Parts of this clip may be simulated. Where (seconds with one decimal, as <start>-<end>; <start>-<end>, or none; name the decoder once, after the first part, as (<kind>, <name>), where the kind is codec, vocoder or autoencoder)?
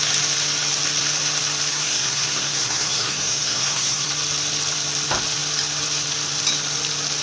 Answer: 1.7-4.1 (codec, SNAC)